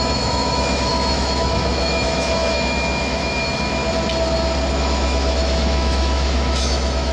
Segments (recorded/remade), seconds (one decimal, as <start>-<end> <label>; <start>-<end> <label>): 0.0-3.8 remade; 3.8-4.7 recorded; 4.7-7.1 remade